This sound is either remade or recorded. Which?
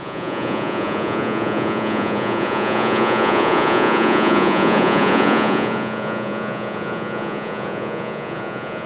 remade